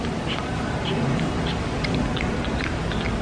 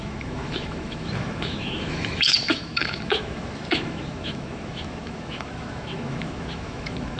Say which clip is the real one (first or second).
first